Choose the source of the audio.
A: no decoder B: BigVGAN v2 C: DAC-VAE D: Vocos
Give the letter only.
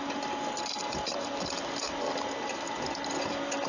A